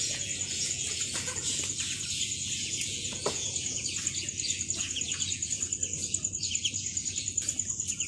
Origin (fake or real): fake